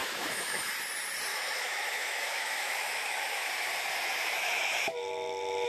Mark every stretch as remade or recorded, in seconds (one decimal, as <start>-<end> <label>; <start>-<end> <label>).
0.0-0.7 remade; 0.7-1.3 recorded; 1.3-3.5 remade; 3.5-4.2 recorded; 4.2-4.7 remade; 4.7-5.7 recorded